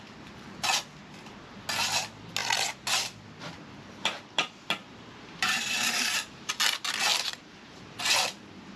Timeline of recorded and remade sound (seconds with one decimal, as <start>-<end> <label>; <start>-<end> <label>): 0.0-4.8 recorded; 4.8-6.5 remade; 6.5-7.1 recorded; 7.1-8.0 remade; 8.0-8.8 recorded